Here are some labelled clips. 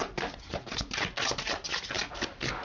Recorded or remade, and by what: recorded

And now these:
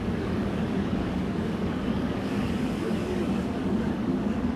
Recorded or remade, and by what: remade, codec, DAC